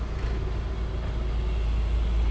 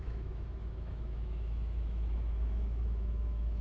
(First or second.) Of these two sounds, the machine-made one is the second